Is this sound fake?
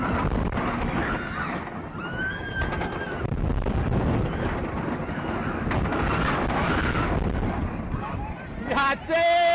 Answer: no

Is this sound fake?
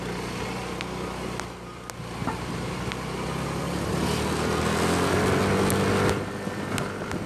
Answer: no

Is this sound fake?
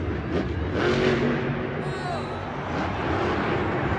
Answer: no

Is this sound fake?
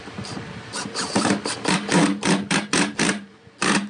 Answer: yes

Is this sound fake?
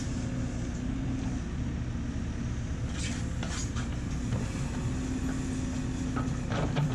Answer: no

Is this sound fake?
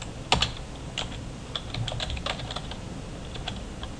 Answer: no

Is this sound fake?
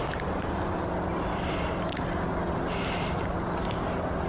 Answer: no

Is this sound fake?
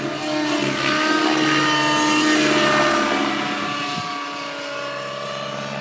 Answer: no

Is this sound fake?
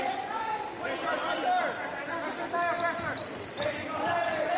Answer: no